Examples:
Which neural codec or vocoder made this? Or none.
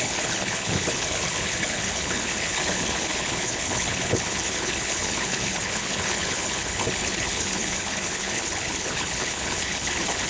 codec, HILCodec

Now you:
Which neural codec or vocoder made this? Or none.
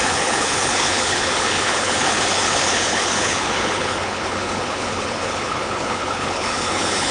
codec, HILCodec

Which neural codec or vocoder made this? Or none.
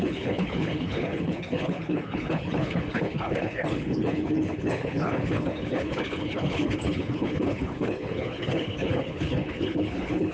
codec, HILCodec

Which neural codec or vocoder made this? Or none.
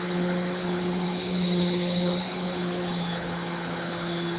codec, HILCodec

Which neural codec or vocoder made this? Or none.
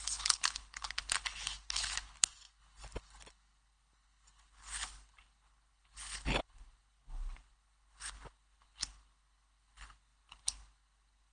codec, HILCodec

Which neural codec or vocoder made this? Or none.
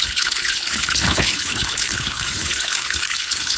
codec, HILCodec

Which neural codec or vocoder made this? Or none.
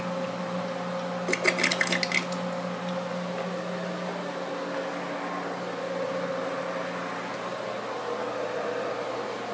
none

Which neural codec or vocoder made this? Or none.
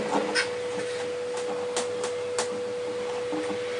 none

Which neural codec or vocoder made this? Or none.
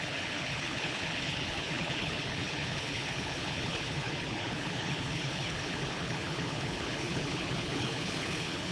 codec, HILCodec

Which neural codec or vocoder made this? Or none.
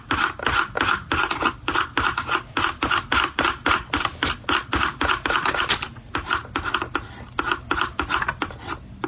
none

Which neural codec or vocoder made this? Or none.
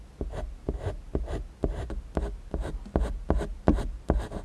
none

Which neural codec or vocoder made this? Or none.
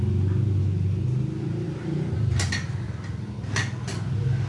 none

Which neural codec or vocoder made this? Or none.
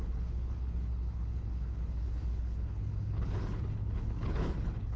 codec, HILCodec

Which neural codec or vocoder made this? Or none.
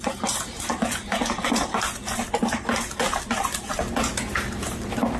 none